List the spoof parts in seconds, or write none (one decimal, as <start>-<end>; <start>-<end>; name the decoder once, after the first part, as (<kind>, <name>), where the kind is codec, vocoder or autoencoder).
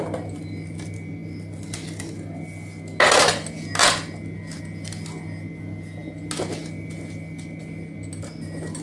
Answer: none